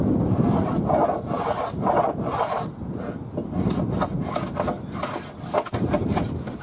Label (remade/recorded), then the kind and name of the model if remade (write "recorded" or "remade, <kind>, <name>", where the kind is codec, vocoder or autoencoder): recorded